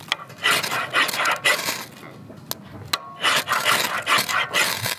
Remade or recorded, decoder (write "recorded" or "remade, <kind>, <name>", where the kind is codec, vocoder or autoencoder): recorded